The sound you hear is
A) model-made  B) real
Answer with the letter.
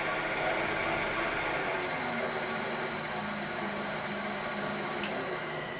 B